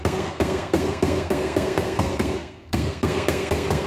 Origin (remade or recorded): remade